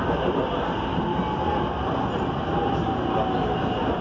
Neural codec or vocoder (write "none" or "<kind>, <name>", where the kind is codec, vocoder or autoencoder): none